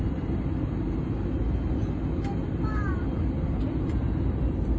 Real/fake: real